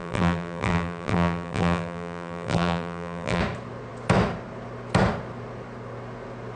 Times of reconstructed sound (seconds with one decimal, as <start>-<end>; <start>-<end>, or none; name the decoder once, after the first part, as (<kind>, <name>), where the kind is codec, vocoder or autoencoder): 0.0-3.4 (vocoder, BigVGAN v2)